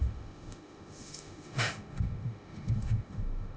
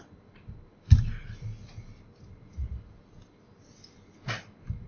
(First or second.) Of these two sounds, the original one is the second